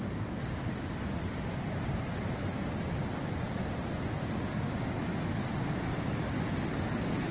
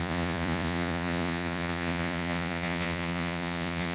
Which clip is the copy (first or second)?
second